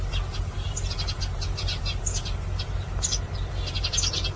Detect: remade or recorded recorded